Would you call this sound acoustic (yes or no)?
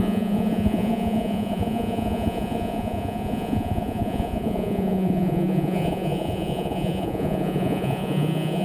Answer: no